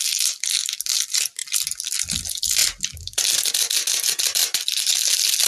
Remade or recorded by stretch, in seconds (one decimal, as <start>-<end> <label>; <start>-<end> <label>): 0.0-5.5 recorded